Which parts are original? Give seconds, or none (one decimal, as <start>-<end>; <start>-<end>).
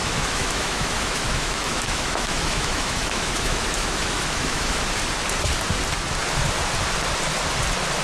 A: 4.8-8.0